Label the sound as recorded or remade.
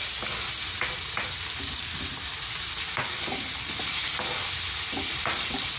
recorded